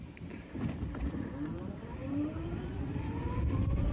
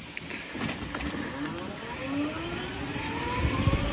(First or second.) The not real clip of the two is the first